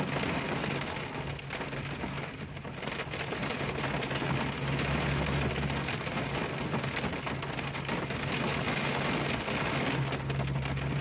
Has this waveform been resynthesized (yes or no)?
no